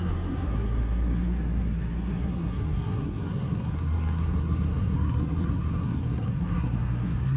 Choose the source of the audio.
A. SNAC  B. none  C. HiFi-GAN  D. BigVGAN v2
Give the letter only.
A